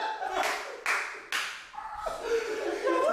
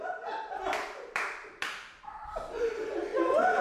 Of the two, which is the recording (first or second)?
first